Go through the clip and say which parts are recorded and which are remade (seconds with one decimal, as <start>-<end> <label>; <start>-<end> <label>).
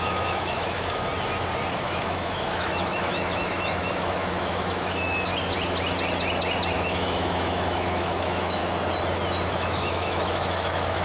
0.0-1.1 remade; 1.1-1.8 recorded; 1.8-5.3 remade; 5.3-6.7 recorded; 6.7-8.6 remade; 8.6-9.5 recorded; 9.5-11.0 remade